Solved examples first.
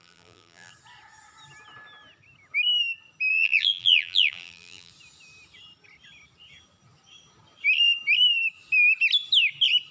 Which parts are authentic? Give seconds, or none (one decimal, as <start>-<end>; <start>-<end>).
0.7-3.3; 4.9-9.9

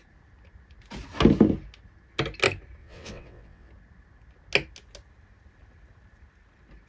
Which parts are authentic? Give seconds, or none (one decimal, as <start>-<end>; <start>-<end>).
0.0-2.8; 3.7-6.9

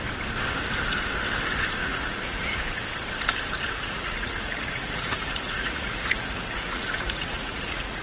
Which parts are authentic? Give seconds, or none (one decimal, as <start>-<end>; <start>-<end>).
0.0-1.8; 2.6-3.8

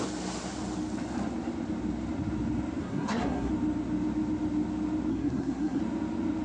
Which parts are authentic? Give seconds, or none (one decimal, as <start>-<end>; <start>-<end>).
0.0-2.8; 3.5-5.1; 5.8-6.4

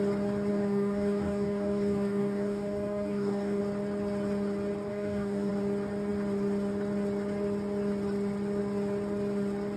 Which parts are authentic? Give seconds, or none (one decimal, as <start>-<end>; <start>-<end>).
0.0-0.5; 3.6-4.9; 5.5-9.8

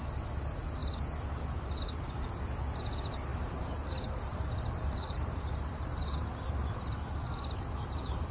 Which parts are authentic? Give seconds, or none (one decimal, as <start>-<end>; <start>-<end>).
0.0-3.3; 6.9-8.3

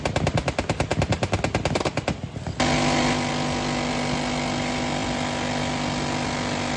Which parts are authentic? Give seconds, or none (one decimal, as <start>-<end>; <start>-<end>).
0.0-6.8

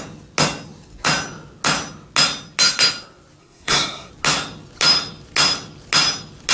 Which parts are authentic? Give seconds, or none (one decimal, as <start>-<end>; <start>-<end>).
0.0-3.4; 4.1-6.5